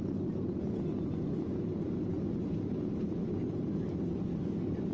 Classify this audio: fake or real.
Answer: real